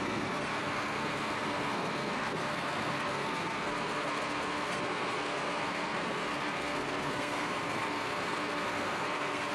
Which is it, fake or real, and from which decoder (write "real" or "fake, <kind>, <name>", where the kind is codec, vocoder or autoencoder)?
fake, codec, SNAC